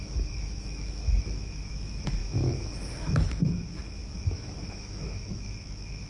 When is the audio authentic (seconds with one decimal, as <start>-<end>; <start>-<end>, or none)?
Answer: none